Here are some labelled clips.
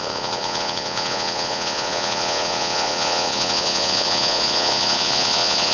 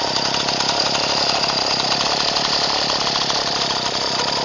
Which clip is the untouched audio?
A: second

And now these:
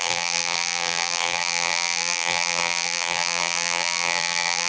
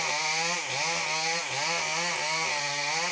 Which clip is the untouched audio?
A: second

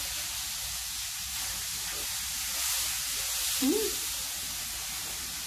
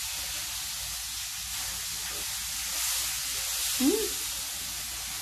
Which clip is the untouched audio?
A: second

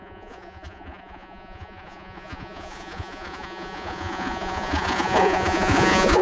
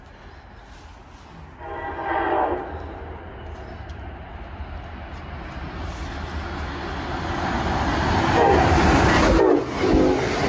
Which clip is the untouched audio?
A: second